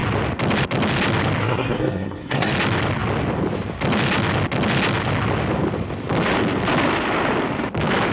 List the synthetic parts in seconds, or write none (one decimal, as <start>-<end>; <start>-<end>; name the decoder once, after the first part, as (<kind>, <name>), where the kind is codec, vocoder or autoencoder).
1.4-2.5 (codec, SNAC)